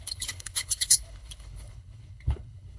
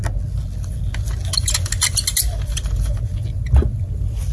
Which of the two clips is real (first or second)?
second